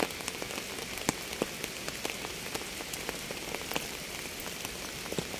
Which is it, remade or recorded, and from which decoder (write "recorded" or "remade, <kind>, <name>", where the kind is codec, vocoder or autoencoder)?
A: recorded